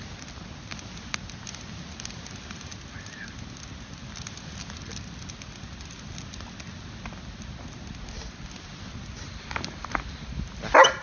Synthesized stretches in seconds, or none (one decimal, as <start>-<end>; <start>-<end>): none